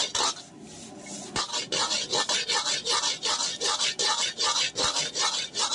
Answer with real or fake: real